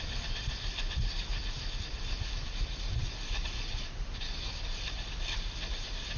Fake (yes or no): no